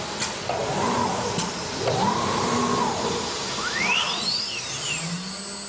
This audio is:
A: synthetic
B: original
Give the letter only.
B